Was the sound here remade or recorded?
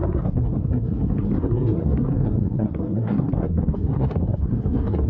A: remade